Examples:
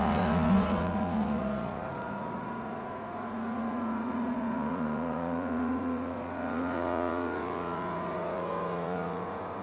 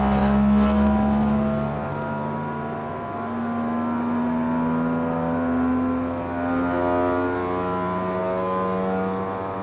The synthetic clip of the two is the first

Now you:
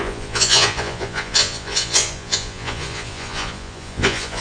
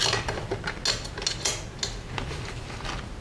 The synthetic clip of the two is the first